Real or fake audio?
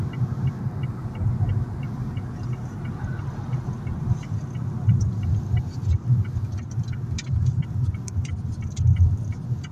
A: real